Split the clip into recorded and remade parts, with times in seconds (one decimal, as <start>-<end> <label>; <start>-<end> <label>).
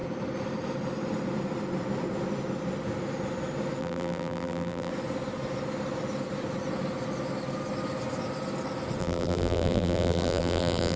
0.0-3.8 recorded; 3.8-4.9 remade; 4.9-9.0 recorded; 9.0-11.0 remade